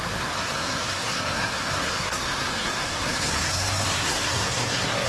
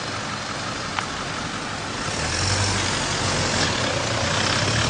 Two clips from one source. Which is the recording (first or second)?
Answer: second